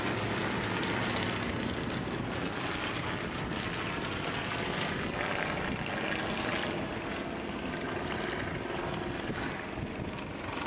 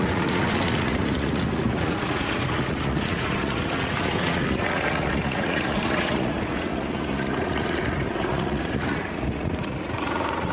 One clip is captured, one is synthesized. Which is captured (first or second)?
first